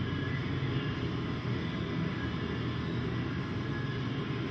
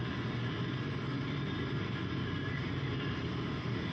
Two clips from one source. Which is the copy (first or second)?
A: second